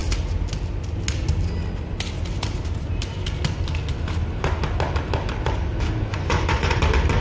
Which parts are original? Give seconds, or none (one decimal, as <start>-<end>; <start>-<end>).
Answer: 0.0-6.1; 6.8-7.2